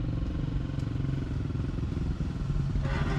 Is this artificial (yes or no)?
no